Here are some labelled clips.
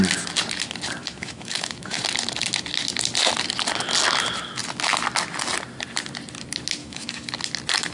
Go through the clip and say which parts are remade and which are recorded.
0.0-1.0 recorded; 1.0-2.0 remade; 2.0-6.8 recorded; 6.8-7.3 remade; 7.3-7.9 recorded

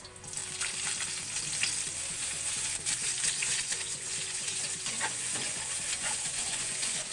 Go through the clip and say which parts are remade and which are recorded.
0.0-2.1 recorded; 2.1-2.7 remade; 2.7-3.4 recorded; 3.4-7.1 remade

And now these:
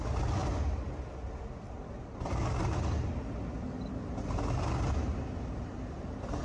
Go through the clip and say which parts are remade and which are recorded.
0.0-6.4 recorded

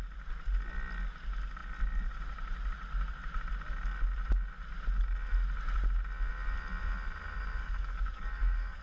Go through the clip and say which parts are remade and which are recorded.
0.0-7.6 recorded; 7.6-8.8 remade